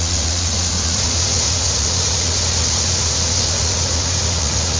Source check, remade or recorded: remade